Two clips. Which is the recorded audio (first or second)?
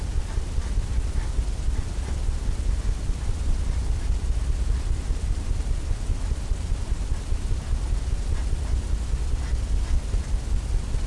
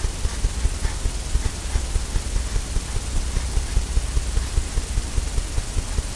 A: second